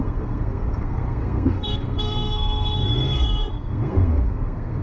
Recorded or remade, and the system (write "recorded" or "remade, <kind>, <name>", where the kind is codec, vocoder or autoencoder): remade, codec, SNAC